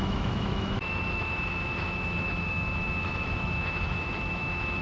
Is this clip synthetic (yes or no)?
yes